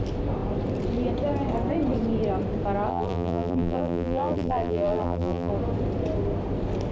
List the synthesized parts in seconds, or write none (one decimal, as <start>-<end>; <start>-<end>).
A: 2.9-5.5

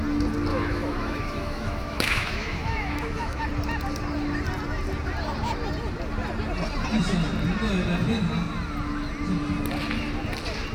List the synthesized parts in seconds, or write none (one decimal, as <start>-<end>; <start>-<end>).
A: 0.5-3.5

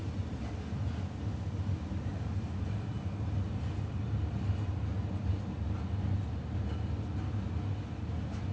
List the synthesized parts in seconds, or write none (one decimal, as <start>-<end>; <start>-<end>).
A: none

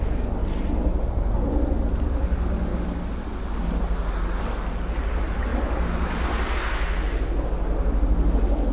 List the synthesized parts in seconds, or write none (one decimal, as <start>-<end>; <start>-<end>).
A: 0.4-1.6

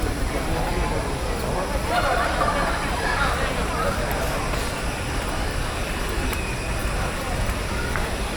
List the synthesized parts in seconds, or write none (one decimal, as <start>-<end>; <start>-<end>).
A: 0.0-2.0; 4.7-8.4

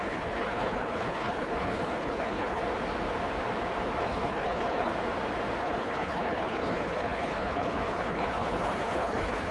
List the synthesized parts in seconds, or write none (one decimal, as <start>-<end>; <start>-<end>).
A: 0.0-2.6; 4.0-4.9; 5.6-9.5

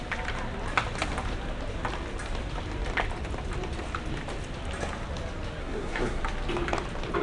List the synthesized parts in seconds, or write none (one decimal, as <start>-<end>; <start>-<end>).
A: 5.6-6.2